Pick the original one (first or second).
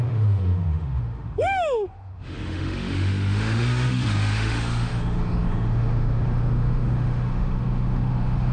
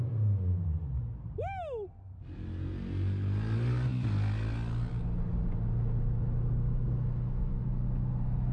second